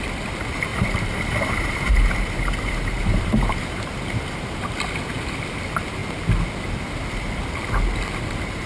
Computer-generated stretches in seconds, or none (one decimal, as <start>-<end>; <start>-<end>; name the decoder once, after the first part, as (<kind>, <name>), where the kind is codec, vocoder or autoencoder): 0.7-5.3 (vocoder, BigVGAN v2)